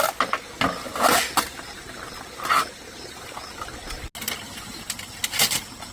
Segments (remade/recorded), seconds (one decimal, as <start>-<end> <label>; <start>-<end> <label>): 0.0-5.9 recorded

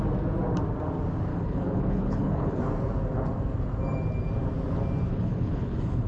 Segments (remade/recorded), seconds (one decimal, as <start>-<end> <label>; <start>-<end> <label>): 0.0-1.3 recorded; 1.3-2.6 remade; 2.6-5.1 recorded; 5.1-6.1 remade

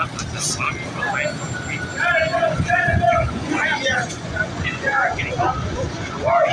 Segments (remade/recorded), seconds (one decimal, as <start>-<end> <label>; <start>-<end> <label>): 0.0-2.3 recorded; 2.3-6.5 remade

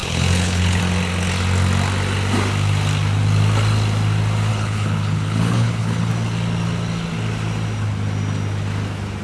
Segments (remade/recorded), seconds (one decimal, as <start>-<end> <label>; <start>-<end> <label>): 0.0-0.8 remade; 0.8-4.5 recorded; 4.5-6.1 remade; 6.1-9.2 recorded

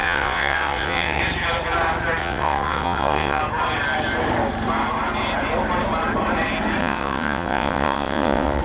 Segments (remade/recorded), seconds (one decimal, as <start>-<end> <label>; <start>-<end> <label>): 0.0-1.2 remade; 1.2-2.2 recorded; 2.2-3.4 remade; 3.4-6.8 recorded; 6.8-8.6 remade